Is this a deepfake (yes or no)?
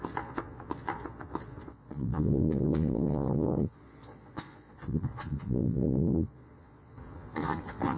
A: yes